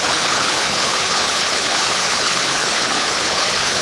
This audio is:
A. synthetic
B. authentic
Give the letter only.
A